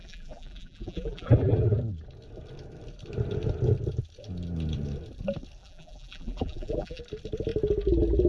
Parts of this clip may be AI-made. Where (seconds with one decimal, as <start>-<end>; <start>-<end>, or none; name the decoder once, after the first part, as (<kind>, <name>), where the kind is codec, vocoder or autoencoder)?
0.0-1.8 (vocoder, BigVGAN v2); 5.6-7.0